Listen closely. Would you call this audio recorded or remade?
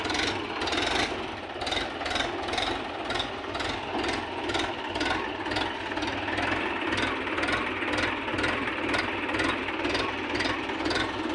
recorded